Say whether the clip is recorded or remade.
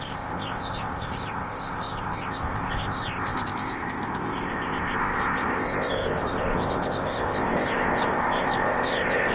remade